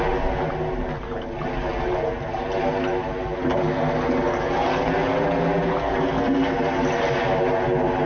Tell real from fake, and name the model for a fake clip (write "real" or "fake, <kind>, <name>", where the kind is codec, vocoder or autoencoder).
real